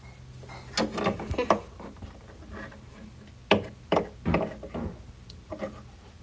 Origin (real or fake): real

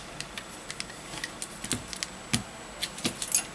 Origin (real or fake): real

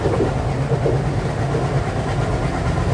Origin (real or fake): real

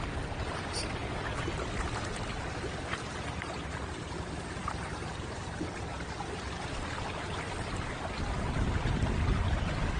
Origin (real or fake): fake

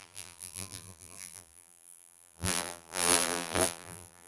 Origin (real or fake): fake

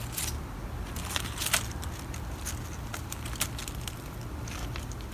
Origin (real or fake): real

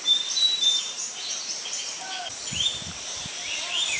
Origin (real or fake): fake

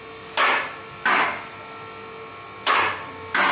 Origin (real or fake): real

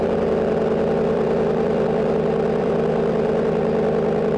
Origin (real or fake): fake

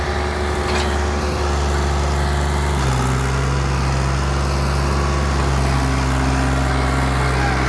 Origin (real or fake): real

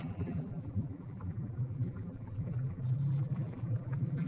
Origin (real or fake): fake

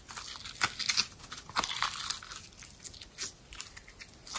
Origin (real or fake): real